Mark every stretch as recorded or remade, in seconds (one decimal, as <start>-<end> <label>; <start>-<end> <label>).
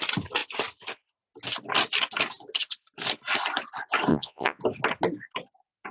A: 0.0-4.1 recorded; 4.1-4.6 remade; 4.6-5.9 recorded